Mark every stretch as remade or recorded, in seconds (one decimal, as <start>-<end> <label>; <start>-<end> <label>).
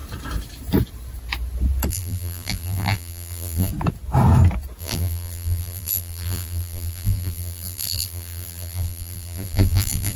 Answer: 0.0-1.9 recorded; 1.9-3.7 remade; 3.7-4.8 recorded; 4.8-10.2 remade